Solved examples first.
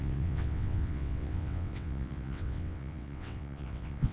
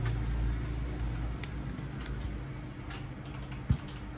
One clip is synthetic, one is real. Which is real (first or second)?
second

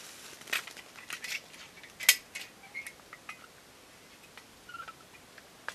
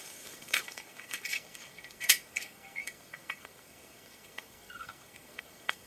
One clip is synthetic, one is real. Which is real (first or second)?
first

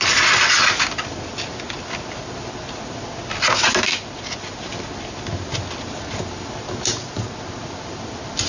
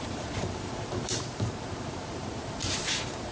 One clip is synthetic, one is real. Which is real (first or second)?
first